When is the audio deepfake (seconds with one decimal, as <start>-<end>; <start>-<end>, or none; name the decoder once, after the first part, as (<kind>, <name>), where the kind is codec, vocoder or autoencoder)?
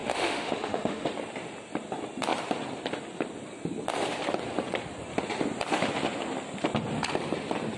0.0-1.1 (autoencoder, DAC-VAE)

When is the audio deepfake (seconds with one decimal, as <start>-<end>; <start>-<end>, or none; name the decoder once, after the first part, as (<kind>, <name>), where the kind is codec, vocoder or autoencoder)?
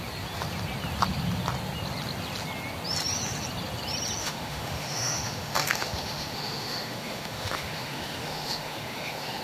4.2-9.4 (autoencoder, DAC-VAE)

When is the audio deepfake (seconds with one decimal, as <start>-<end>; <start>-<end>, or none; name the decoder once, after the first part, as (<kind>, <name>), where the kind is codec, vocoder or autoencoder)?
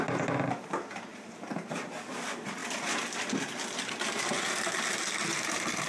1.1-1.9 (vocoder, BigVGAN v2); 5.3-5.9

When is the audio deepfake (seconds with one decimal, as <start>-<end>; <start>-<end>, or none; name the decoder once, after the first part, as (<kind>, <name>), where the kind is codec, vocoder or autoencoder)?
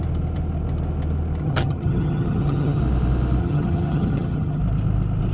1.4-2.8 (vocoder, HiFi-GAN); 3.4-4.6